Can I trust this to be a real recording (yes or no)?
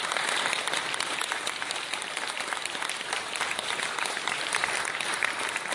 no